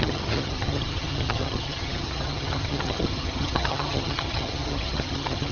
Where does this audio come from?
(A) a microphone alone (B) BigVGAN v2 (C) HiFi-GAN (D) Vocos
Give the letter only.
C